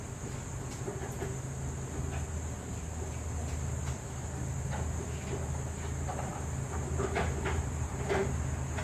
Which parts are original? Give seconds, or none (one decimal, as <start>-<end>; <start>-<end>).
0.0-8.8